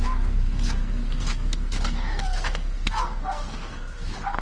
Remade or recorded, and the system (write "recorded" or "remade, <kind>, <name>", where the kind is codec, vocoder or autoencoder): remade, codec, SNAC